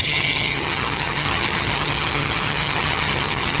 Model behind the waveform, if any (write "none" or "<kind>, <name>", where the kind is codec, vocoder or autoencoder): vocoder, HiFi-GAN